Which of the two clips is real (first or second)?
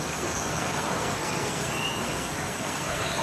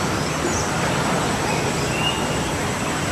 second